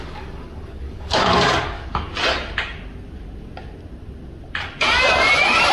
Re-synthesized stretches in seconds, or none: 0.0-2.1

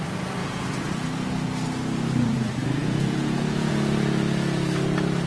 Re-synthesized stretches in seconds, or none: 0.4-0.9; 2.8-3.7

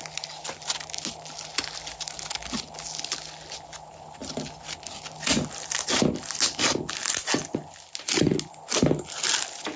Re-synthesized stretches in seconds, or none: none

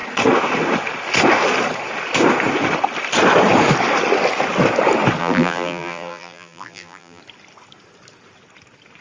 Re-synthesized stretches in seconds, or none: 5.2-7.2

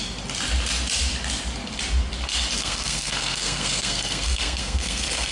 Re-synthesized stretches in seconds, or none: 2.6-5.3

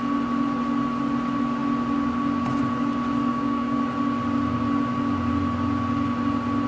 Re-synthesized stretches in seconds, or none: 3.3-3.8

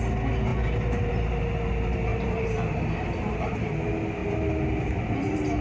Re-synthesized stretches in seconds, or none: 2.1-3.7